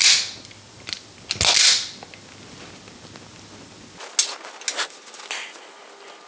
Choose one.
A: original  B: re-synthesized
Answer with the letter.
A